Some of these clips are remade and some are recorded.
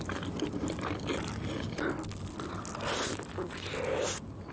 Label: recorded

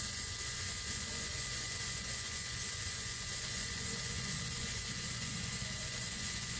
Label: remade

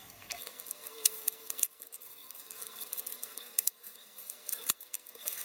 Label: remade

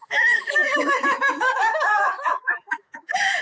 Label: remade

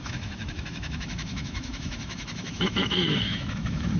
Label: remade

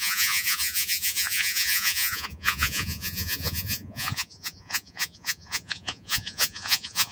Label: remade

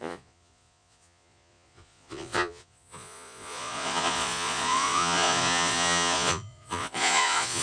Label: remade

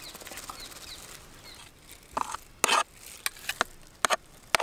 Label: recorded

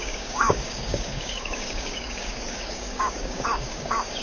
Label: remade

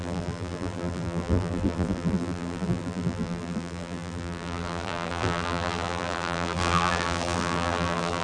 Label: remade